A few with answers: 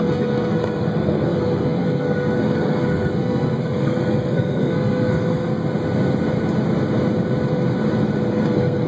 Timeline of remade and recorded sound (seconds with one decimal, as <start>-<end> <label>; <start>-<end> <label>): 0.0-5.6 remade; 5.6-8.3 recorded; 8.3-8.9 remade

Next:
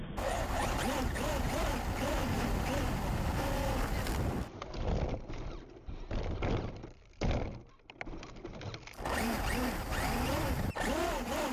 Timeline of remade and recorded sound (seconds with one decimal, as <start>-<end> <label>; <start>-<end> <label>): 0.0-11.5 recorded

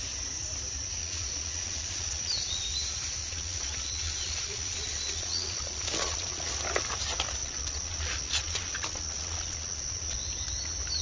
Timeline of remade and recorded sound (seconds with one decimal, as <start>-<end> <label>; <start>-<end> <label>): 0.0-1.0 recorded; 1.0-2.6 remade; 2.6-3.2 recorded; 3.2-6.5 remade; 6.5-7.4 recorded; 7.4-10.2 remade; 10.2-11.0 recorded